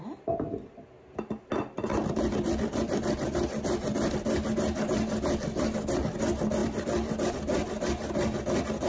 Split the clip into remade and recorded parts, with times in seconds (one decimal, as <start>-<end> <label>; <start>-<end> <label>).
0.0-1.9 recorded; 1.9-4.2 remade; 4.2-6.6 recorded; 6.6-7.3 remade; 7.3-8.9 recorded